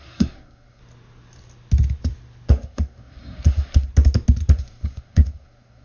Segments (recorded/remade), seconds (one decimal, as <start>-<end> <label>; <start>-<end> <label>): 0.0-0.8 remade; 0.8-2.5 recorded; 2.5-3.9 remade; 3.9-4.5 recorded; 4.5-5.8 remade